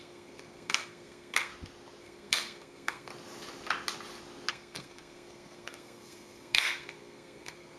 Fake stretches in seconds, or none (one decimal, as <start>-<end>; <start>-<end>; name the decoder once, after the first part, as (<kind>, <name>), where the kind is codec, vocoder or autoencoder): 0.0-1.5 (codec, SNAC); 2.0-3.1; 4.5-7.8